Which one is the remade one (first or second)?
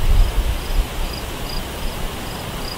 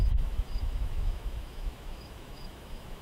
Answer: second